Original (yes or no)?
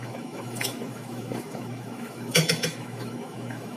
no